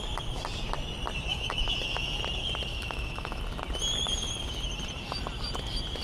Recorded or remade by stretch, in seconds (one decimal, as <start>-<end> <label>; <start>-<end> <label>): 0.0-1.3 recorded; 1.3-2.2 remade; 2.2-2.7 recorded; 2.7-3.4 remade; 3.4-6.0 recorded